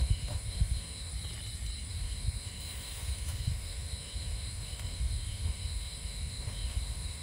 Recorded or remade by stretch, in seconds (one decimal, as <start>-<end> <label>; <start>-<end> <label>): 0.0-1.1 remade; 1.1-1.9 recorded; 1.9-7.2 remade